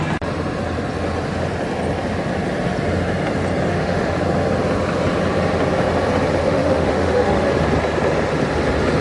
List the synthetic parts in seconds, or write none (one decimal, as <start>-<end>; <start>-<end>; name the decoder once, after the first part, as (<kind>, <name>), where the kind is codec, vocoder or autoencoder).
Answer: 3.7-4.2 (autoencoder, DAC-VAE); 6.4-7.5